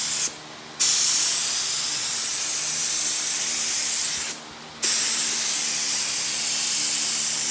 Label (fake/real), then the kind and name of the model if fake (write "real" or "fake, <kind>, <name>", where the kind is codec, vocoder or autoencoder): real